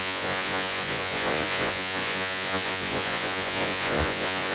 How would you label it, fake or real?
fake